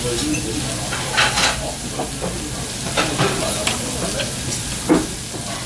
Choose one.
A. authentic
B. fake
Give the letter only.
A